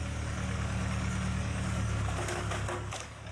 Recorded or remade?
remade